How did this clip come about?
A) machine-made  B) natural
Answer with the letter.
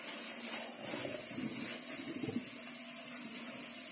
B